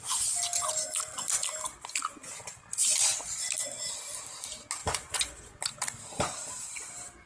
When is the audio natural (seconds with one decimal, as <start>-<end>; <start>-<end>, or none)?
0.0-4.8; 5.6-7.3